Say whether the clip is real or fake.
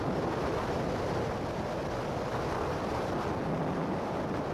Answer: real